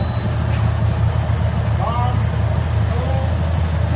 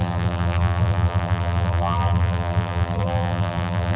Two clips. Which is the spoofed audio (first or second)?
second